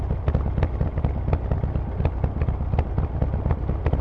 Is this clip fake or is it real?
real